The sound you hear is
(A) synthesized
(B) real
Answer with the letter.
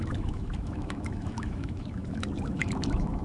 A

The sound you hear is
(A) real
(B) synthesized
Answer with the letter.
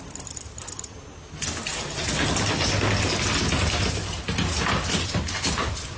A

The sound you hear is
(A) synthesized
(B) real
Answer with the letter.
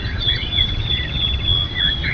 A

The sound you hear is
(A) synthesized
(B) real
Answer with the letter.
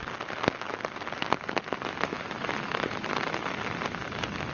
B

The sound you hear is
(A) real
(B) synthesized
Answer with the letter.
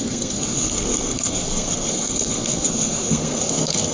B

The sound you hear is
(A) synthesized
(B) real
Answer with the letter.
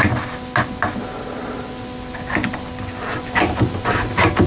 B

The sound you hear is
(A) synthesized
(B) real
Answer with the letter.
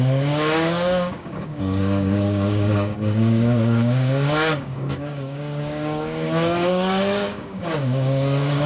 A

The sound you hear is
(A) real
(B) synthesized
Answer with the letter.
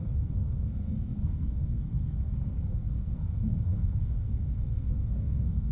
B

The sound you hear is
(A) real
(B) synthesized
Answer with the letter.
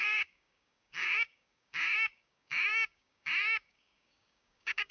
B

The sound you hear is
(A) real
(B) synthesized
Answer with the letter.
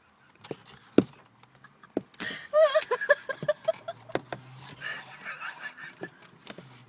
A